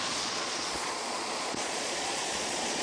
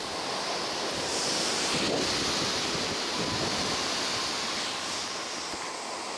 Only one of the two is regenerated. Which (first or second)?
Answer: first